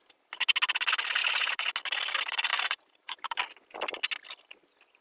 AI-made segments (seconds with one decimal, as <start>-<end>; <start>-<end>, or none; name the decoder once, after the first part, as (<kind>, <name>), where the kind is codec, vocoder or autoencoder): 1.2-1.7 (vocoder, BigVGAN v2); 2.5-3.4

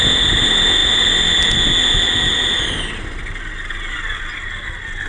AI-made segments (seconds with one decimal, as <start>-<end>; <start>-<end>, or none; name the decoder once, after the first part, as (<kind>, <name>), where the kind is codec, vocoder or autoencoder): none

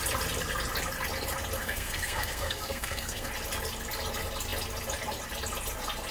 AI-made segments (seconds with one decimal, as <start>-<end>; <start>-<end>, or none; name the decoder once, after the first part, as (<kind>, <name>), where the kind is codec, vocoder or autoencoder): 1.6-3.3 (codec, SNAC)

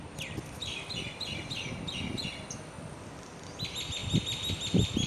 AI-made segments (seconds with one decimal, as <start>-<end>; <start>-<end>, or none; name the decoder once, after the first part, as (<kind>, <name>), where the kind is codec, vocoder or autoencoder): none

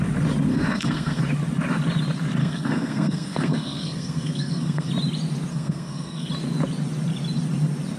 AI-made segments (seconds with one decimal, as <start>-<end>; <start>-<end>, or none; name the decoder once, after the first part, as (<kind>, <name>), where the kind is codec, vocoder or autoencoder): 0.5-1.2 (codec, SNAC); 2.4-4.9; 5.5-6.3

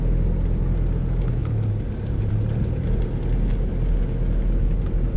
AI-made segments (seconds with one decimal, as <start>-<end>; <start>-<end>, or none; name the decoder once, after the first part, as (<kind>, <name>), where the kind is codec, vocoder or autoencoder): none